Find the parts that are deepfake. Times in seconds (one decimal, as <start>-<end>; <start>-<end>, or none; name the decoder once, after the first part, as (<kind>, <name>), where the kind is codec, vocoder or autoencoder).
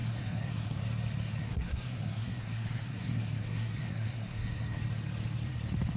0.0-0.8 (codec, SNAC); 1.4-4.8